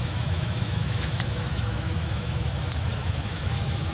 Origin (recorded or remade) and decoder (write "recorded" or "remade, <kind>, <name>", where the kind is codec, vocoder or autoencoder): remade, autoencoder, DAC-VAE